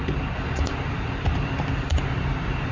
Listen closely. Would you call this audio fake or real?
real